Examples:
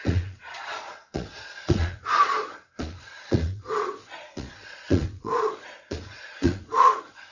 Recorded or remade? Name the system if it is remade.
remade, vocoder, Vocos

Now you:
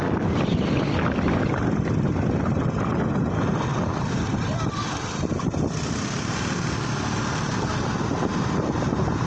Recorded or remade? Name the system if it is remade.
recorded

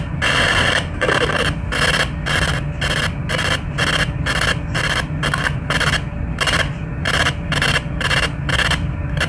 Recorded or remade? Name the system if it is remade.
recorded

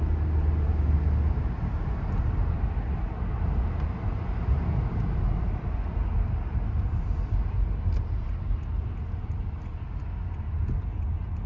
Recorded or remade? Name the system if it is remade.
recorded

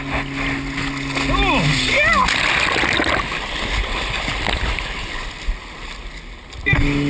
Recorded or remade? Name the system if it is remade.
recorded